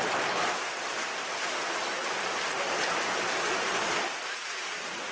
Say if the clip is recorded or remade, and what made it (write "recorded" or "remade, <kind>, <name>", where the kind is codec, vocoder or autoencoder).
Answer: recorded